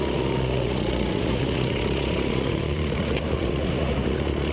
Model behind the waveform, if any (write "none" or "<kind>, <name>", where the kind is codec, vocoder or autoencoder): vocoder, Vocos